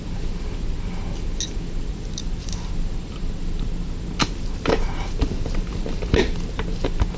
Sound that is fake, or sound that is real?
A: real